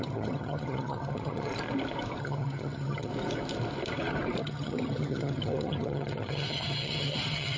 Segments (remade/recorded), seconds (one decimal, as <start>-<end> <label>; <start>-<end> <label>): 0.0-1.5 remade; 1.5-2.2 recorded; 2.2-3.1 remade; 3.1-4.4 recorded; 4.4-7.6 remade